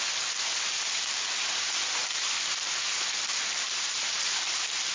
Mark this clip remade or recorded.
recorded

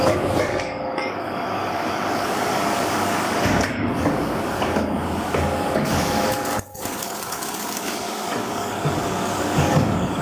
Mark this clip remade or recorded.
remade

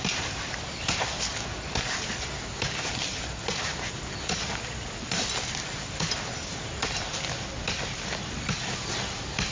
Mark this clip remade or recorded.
recorded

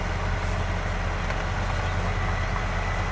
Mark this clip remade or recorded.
recorded